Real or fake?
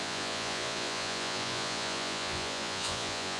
fake